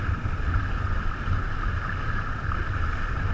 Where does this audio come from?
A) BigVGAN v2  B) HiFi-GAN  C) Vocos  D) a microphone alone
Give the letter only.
D